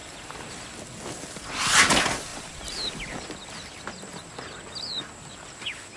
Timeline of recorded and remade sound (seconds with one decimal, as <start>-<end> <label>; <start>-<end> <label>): 0.0-6.0 recorded